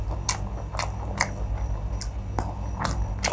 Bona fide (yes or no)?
yes